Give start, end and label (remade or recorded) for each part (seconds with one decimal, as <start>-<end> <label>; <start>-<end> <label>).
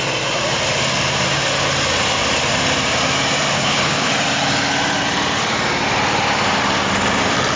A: 0.0-3.5 recorded; 3.5-4.1 remade; 4.1-7.6 recorded